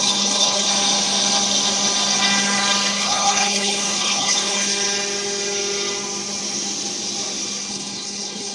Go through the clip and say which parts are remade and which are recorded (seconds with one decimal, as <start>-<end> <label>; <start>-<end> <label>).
0.0-0.7 remade; 0.7-2.9 recorded; 2.9-4.7 remade; 4.7-7.7 recorded; 7.7-8.5 remade